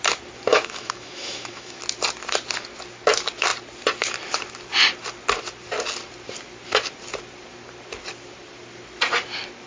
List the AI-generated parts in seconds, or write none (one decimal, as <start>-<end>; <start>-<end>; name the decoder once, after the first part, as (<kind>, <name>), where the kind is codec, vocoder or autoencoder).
0.5-1.8 (autoencoder, DAC-VAE)